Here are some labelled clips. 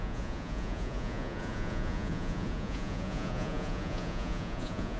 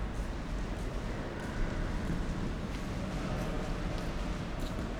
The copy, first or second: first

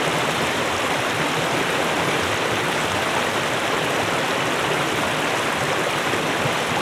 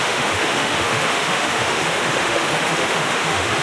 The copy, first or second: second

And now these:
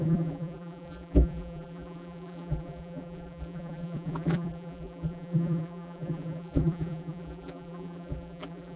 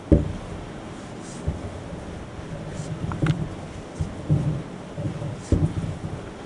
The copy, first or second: first